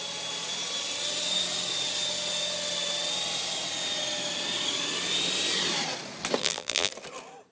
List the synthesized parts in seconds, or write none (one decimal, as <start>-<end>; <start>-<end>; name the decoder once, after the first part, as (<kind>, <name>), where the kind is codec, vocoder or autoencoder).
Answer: 6.4-6.9 (vocoder, BigVGAN v2)